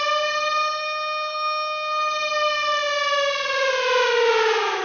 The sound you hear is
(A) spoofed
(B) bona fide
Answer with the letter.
B